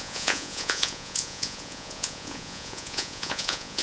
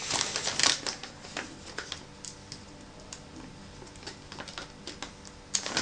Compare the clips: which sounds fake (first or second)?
first